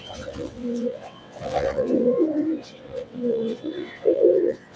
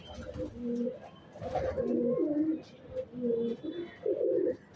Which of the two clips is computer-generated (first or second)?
first